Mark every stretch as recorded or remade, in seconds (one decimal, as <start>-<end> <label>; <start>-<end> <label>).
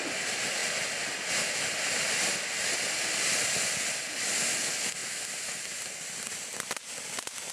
0.0-7.5 recorded